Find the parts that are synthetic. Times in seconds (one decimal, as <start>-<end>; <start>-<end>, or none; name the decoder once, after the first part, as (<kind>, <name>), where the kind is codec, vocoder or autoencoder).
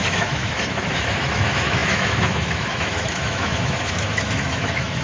0.0-5.0 (autoencoder, DAC-VAE)